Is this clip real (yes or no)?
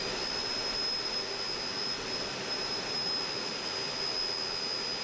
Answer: yes